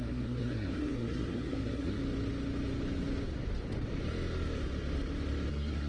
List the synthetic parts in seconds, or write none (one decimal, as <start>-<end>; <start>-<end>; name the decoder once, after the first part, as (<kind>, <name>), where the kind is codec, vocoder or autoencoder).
0.0-2.0 (codec, SNAC); 5.5-5.9